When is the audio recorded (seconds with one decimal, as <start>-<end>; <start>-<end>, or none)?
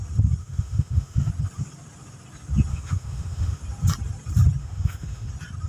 0.0-0.4; 1.3-2.7; 3.6-4.6; 5.3-5.7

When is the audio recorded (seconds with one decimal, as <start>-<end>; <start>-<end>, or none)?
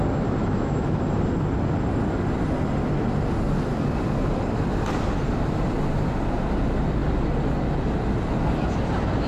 0.0-0.4; 1.0-9.3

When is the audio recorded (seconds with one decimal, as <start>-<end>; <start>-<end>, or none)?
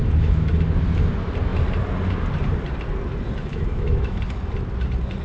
0.5-3.5; 4.2-5.2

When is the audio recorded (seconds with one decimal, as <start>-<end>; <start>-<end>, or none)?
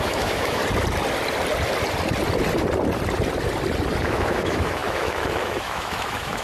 0.6-4.0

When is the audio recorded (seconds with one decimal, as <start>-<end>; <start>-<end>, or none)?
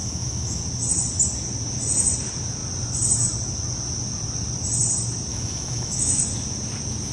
0.6-5.3; 6.2-7.1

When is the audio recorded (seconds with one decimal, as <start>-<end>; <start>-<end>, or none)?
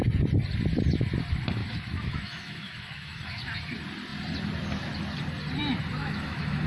0.0-1.6; 3.5-6.0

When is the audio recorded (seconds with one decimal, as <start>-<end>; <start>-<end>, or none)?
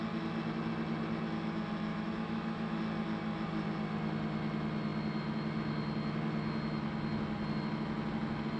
0.0-1.9; 2.8-8.6